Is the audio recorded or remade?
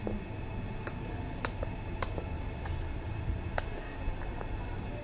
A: recorded